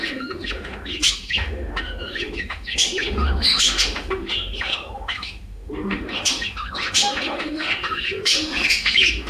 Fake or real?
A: fake